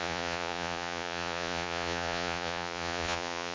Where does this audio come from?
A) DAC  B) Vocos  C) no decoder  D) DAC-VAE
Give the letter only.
B